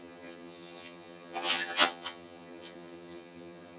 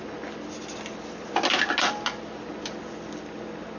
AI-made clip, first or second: first